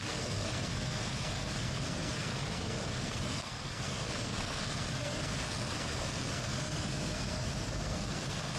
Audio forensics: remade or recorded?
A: remade